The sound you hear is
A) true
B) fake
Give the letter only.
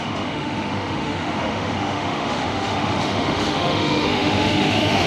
B